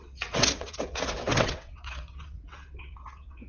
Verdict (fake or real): fake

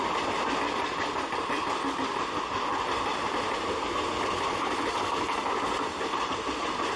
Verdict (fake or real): real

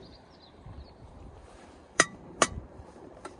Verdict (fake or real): fake